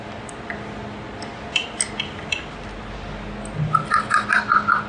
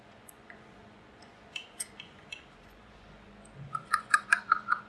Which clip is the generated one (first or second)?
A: second